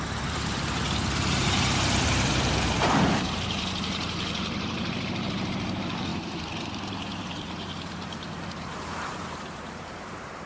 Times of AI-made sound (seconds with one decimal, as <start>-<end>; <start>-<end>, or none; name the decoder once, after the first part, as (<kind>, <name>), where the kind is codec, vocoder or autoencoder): 0.0-10.5 (vocoder, BigVGAN v2)